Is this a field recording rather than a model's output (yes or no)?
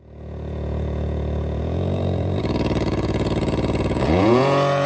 no